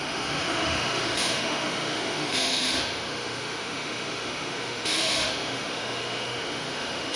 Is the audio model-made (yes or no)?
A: yes